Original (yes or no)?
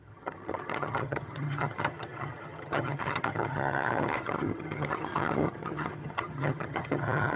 no